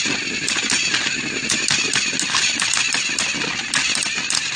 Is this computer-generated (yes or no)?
no